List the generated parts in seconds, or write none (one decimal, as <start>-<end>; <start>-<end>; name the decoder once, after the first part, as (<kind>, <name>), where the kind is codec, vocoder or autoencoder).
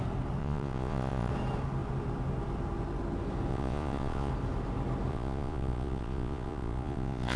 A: 0.4-1.3 (vocoder, Vocos); 3.5-4.3; 5.1-7.4